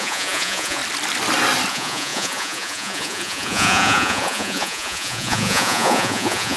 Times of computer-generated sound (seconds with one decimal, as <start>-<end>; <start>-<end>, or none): 0.0-0.8; 1.7-6.6